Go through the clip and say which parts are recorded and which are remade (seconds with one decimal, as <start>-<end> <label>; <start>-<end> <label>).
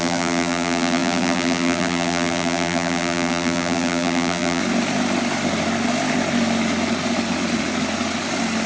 0.0-4.6 remade; 4.6-8.7 recorded